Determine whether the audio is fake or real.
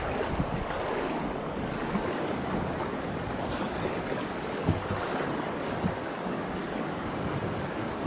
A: fake